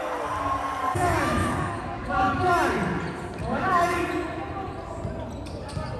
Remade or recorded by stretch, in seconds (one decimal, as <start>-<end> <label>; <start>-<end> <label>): 0.0-1.4 recorded; 1.4-2.5 remade; 2.5-3.4 recorded; 3.4-4.1 remade; 4.1-6.0 recorded